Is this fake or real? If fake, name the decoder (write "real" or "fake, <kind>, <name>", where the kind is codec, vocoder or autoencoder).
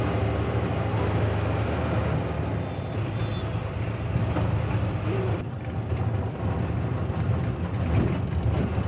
real